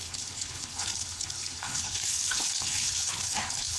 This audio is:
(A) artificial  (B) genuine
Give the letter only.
A